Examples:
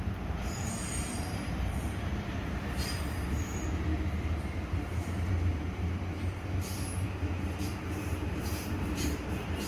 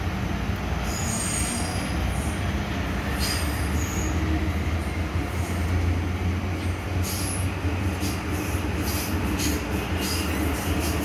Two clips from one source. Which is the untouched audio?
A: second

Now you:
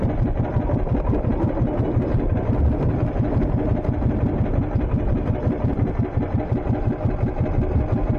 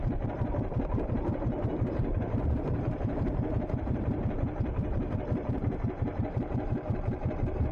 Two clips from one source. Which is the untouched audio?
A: first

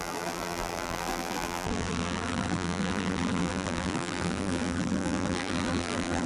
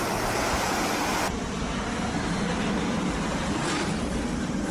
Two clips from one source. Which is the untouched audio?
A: second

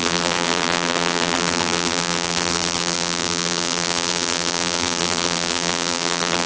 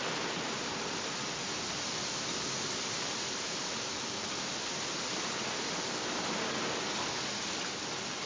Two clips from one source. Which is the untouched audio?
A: second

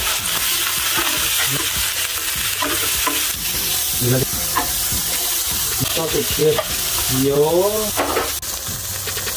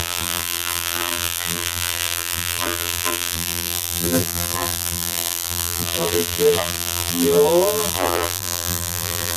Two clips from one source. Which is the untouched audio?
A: first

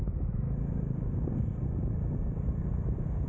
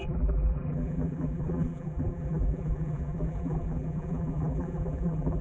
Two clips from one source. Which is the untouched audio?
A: first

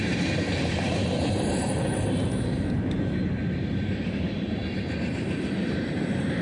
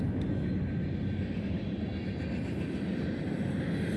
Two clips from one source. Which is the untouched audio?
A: second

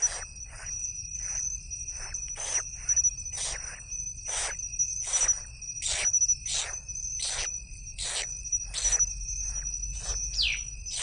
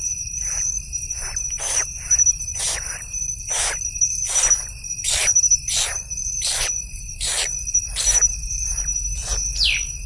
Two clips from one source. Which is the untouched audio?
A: first